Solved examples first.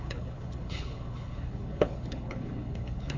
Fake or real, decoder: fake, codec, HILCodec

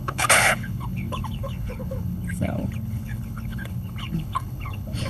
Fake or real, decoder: fake, codec, HILCodec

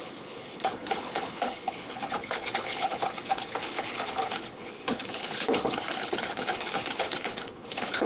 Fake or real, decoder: fake, codec, HILCodec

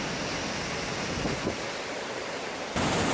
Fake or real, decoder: real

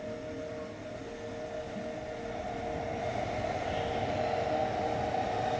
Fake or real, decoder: real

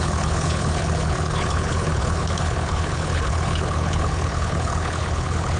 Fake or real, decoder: fake, codec, HILCodec